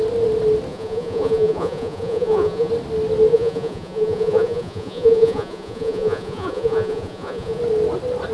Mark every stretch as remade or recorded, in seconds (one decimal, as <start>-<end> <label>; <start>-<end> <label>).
0.0-0.7 recorded; 0.7-2.7 remade; 2.7-3.3 recorded; 3.3-7.6 remade; 7.6-8.3 recorded